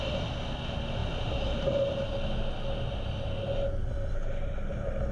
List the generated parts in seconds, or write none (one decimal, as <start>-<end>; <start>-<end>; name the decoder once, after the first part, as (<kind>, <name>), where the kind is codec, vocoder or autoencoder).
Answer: none